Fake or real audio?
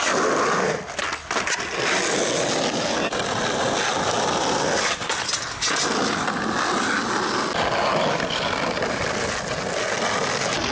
real